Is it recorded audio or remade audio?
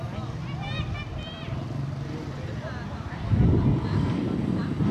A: recorded